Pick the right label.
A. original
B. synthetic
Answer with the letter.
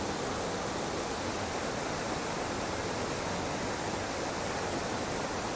A